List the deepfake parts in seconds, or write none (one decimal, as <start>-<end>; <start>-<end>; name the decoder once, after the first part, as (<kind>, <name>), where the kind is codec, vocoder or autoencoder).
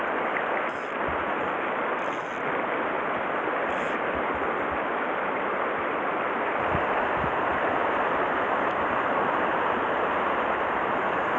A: none